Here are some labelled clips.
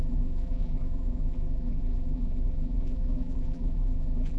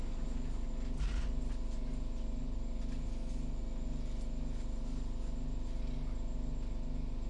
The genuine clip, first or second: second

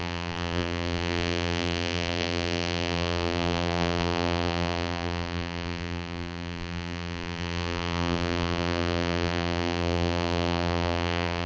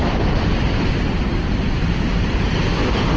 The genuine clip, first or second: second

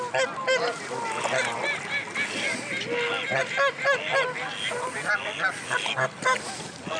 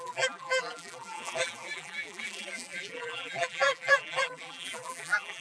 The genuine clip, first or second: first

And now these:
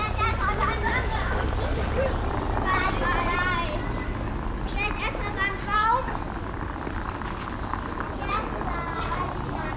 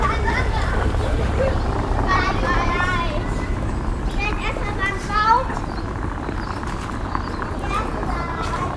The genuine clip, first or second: first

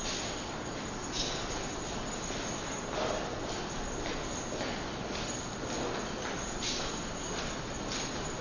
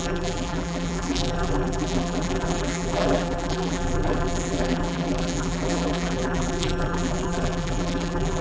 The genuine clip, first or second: first